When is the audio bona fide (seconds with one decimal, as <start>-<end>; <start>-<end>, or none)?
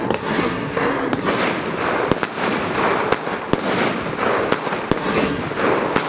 1.3-5.0; 5.4-6.1